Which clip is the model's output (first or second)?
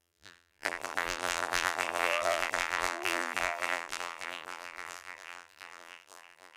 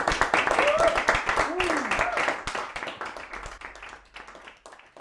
first